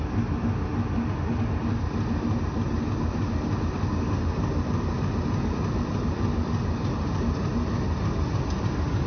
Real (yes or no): yes